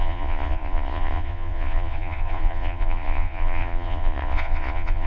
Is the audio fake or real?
fake